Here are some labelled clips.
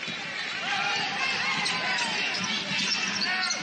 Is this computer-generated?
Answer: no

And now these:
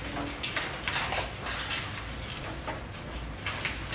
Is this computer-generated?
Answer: no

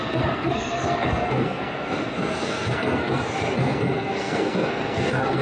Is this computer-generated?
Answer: yes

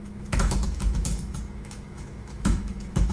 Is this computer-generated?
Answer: yes